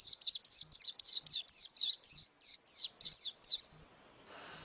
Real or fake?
fake